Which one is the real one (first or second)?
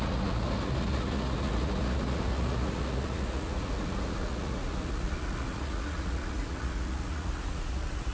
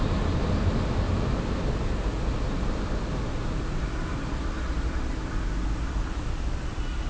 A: second